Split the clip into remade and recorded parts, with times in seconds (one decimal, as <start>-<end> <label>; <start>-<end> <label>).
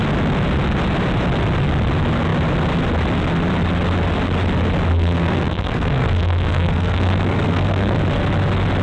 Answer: 0.0-4.9 recorded; 4.9-8.0 remade; 8.0-8.8 recorded